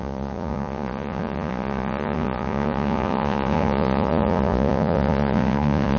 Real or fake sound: fake